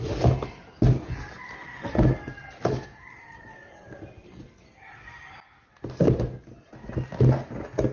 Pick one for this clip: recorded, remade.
recorded